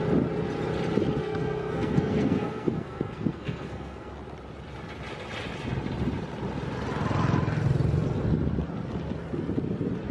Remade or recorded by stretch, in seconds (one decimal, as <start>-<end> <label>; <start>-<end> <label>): 0.0-1.2 recorded; 1.2-4.1 remade; 4.1-10.1 recorded

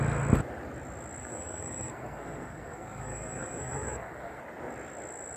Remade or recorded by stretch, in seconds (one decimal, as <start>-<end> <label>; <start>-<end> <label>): 0.0-1.2 recorded; 1.2-4.4 remade; 4.4-5.4 recorded